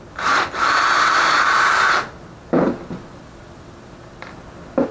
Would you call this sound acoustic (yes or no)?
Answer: yes